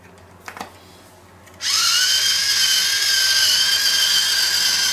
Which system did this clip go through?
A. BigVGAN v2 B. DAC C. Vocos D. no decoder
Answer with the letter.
D